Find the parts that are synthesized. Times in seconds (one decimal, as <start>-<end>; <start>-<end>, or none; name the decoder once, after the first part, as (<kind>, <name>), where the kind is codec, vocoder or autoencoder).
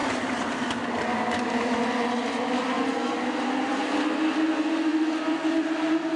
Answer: none